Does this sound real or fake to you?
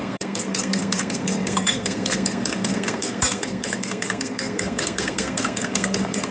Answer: fake